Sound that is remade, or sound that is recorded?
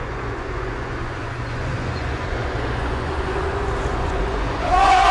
remade